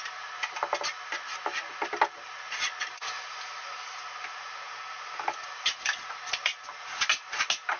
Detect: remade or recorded recorded